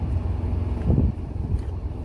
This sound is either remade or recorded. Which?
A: recorded